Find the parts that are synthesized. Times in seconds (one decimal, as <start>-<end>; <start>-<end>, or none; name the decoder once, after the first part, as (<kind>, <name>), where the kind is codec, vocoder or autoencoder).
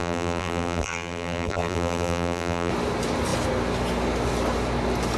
0.0-2.7 (vocoder, BigVGAN v2)